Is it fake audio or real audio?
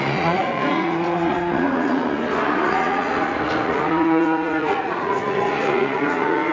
fake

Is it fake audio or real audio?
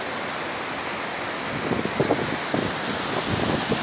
real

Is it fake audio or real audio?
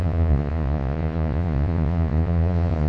fake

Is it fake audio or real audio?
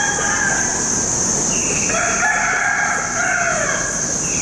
real